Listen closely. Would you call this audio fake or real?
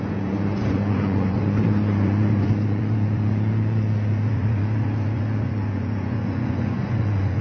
fake